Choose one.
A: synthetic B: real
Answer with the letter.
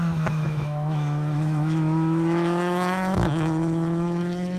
A